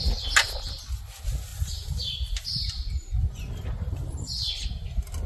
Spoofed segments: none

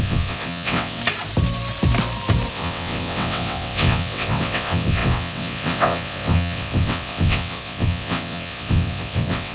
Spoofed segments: 0.0-1.0 (vocoder, WaveNeXt); 2.5-9.5

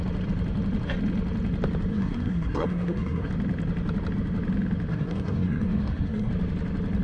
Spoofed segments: 1.9-3.3 (codec, SNAC); 4.9-6.3

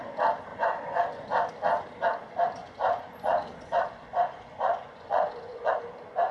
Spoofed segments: 0.5-1.5 (vocoder, Vocos); 2.6-5.7